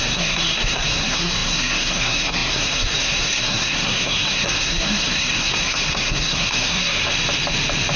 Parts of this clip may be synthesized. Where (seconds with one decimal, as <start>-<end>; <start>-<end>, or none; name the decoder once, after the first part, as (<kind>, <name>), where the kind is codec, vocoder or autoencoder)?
0.0-7.1 (codec, SNAC)